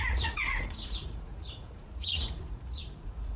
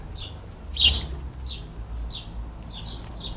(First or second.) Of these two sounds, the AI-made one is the first